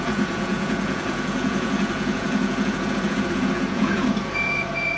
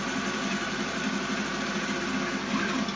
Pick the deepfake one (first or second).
first